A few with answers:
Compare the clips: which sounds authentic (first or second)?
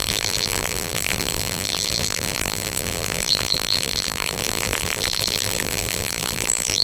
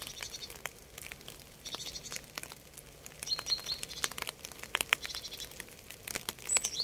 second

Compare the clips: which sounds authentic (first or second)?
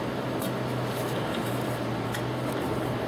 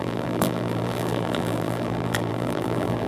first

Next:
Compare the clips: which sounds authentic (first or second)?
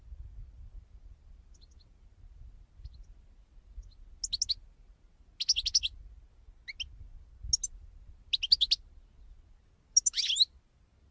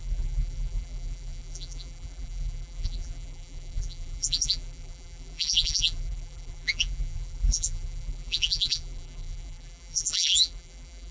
first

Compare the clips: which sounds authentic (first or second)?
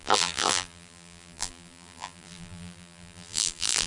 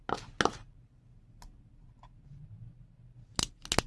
second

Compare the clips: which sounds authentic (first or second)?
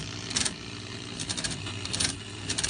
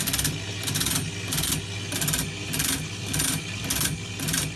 second